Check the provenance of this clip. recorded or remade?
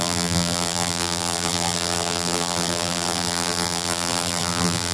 remade